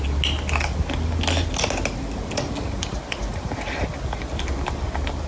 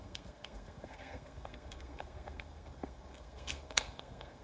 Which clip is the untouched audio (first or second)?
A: first